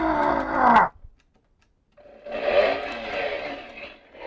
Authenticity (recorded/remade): recorded